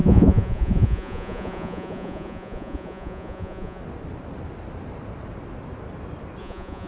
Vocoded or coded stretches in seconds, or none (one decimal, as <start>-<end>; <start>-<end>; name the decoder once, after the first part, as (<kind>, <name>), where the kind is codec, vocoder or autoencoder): 0.0-3.8 (vocoder, Vocos); 6.4-6.9